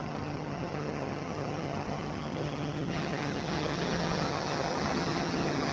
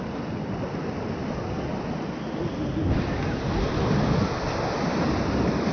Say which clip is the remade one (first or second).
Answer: first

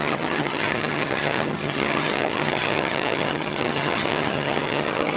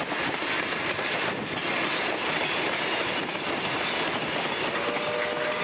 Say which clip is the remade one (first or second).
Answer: first